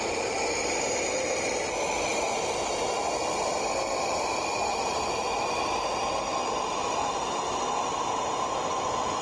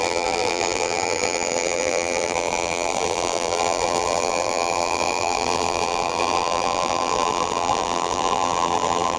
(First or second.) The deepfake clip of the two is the second